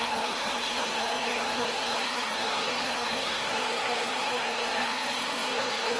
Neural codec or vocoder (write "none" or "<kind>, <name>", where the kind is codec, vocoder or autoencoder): codec, SNAC